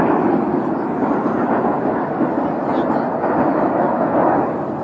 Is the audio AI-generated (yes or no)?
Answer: no